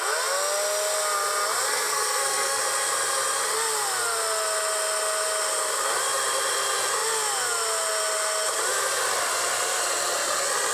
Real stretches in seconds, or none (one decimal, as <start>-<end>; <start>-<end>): 0.0-1.7; 2.6-10.7